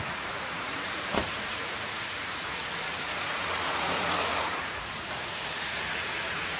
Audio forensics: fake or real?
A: fake